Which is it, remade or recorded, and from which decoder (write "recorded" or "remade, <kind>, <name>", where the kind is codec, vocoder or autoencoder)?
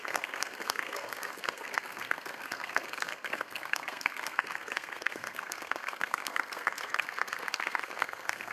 remade, codec, SNAC